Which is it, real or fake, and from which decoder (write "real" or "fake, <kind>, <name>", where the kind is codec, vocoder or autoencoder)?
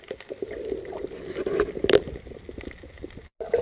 fake, vocoder, BigVGAN v2